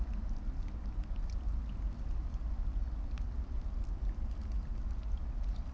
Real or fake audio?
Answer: real